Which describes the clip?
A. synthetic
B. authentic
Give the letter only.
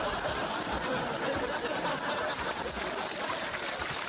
B